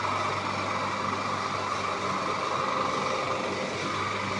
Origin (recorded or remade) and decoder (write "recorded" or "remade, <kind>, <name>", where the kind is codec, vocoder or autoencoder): recorded